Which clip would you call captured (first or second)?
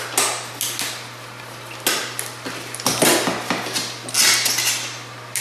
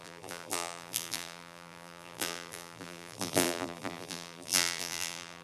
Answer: first